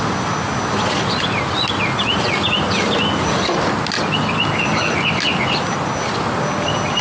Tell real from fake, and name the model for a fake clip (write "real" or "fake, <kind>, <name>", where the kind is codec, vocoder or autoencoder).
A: real